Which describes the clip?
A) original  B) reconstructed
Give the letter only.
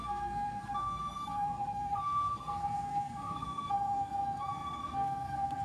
B